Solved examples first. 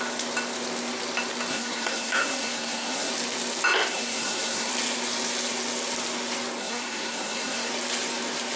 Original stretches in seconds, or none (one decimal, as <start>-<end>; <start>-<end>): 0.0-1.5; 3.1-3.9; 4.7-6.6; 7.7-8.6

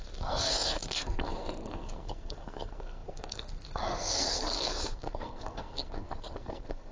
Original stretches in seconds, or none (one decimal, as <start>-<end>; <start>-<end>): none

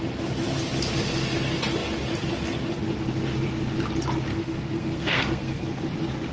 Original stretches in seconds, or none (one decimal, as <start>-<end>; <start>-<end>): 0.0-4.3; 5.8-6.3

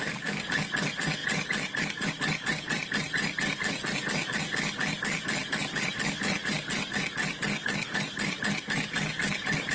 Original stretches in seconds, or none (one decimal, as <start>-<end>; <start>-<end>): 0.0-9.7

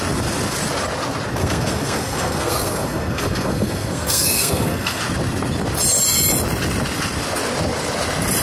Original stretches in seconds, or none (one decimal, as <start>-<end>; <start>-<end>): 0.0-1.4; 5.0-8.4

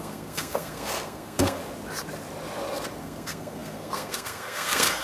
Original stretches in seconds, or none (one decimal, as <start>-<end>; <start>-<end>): 1.6-3.0

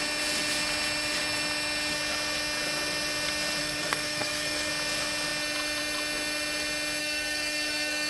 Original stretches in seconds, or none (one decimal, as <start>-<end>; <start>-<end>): 0.0-3.6; 4.7-7.0

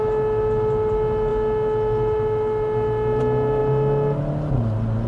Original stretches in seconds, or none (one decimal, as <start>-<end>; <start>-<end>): 0.0-5.1